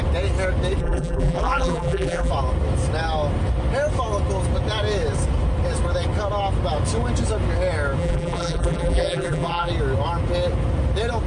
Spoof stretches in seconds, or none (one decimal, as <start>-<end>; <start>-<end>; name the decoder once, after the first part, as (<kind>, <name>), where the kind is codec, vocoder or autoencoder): 0.8-2.3 (vocoder, BigVGAN v2); 8.0-9.7

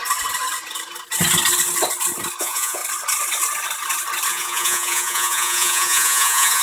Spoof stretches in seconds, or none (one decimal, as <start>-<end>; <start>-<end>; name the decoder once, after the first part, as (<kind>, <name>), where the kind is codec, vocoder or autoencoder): 2.4-2.8 (vocoder, Vocos); 4.3-6.6

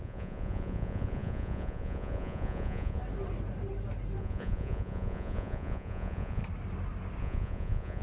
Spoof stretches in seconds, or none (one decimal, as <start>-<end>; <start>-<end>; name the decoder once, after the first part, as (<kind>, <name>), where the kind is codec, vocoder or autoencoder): 0.0-3.0 (vocoder, Vocos); 4.2-6.4; 7.2-8.0

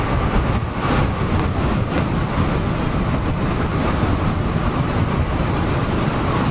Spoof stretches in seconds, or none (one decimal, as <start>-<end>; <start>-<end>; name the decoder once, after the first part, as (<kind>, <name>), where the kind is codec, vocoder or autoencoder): none